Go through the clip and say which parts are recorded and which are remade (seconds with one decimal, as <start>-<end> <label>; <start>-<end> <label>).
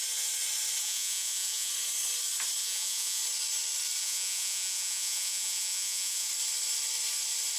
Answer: 0.0-0.8 recorded; 0.8-1.7 remade; 1.7-2.6 recorded; 2.6-3.2 remade; 3.2-4.0 recorded; 4.0-6.3 remade; 6.3-7.6 recorded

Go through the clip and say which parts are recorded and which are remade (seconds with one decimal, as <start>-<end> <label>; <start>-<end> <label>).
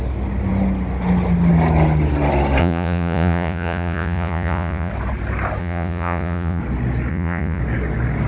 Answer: 0.0-2.6 recorded; 2.6-4.9 remade; 4.9-5.6 recorded; 5.6-6.6 remade; 6.6-7.1 recorded; 7.1-7.6 remade; 7.6-8.3 recorded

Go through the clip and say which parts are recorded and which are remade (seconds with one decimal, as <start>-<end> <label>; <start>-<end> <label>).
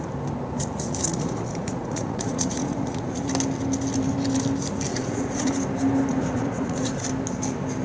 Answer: 0.0-1.1 recorded; 1.1-3.3 remade; 3.3-4.9 recorded; 4.9-5.5 remade; 5.5-6.1 recorded; 6.1-7.0 remade; 7.0-7.8 recorded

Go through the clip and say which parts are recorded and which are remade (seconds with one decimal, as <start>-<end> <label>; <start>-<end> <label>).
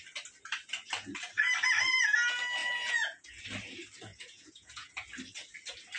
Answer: 0.0-2.6 recorded; 2.6-3.4 remade; 3.4-4.1 recorded; 4.1-4.9 remade; 4.9-6.0 recorded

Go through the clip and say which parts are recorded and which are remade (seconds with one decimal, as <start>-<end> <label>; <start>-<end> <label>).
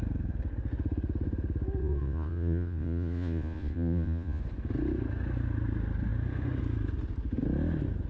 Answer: 0.0-1.8 recorded; 1.8-4.4 remade; 4.4-8.1 recorded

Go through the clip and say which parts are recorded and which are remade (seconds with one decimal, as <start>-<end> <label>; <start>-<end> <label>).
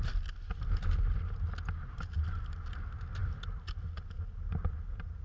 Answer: 0.0-5.2 recorded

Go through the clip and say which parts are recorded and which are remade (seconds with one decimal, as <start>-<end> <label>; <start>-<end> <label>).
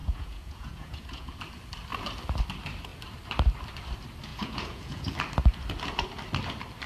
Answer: 0.0-1.4 remade; 1.4-4.3 recorded; 4.3-5.1 remade; 5.1-6.9 recorded